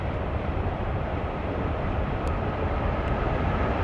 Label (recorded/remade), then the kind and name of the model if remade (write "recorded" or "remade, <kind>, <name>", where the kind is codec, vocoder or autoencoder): remade, vocoder, BigVGAN v2